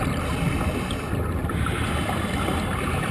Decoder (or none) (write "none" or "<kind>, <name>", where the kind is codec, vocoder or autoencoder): none